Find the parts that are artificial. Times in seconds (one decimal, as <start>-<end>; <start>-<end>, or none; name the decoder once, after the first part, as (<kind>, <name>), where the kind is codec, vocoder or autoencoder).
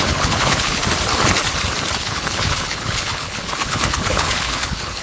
0.0-0.8 (codec, HILCodec); 2.0-5.0